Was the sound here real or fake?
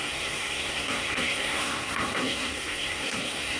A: fake